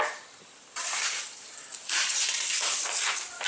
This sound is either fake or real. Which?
real